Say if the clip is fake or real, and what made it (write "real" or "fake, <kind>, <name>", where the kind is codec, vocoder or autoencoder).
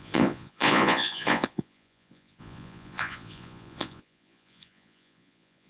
fake, vocoder, Vocos